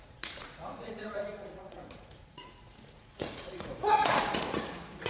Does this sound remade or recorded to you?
remade